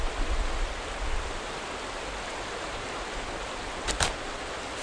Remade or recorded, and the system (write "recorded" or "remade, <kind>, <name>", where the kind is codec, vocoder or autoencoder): recorded